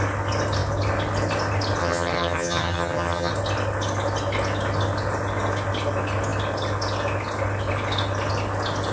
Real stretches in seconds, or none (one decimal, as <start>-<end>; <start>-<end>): 0.0-1.8; 3.3-8.9